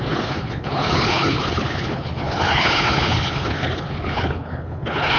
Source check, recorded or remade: remade